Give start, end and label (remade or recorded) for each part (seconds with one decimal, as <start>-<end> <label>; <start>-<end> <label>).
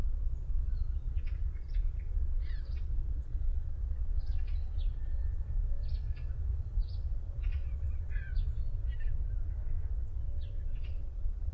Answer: 0.0-8.5 remade; 8.5-10.8 recorded; 10.8-11.5 remade